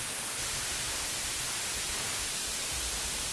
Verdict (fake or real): real